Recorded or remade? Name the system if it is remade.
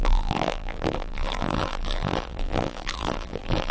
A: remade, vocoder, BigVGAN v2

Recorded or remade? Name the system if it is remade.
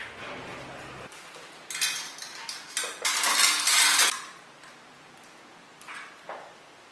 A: recorded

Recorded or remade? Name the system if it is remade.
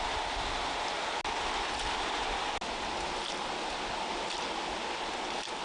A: recorded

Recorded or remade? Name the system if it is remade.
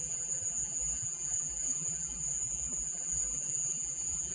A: remade, vocoder, BigVGAN v2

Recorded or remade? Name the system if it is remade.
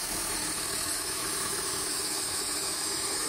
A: remade, autoencoder, DAC-VAE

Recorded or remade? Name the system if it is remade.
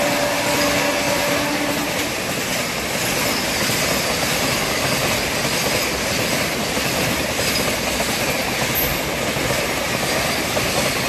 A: recorded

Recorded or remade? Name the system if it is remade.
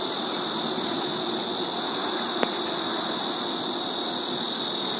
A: recorded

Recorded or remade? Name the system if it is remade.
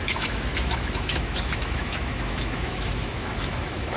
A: remade, autoencoder, DAC-VAE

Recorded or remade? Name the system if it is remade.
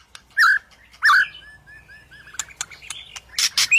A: recorded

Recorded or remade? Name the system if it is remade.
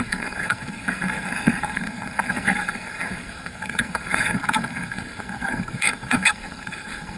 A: remade, codec, SNAC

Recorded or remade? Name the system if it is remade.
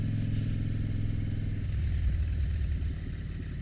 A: recorded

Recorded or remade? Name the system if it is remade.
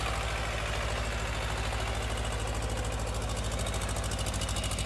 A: recorded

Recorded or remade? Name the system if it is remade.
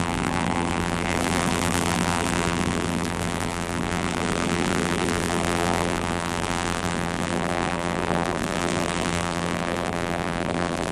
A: remade, vocoder, BigVGAN v2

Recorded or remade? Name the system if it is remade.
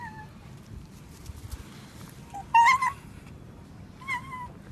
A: recorded